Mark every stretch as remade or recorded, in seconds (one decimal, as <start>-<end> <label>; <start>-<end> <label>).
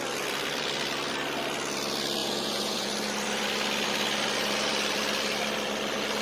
0.0-2.2 recorded; 2.2-2.9 remade; 2.9-6.2 recorded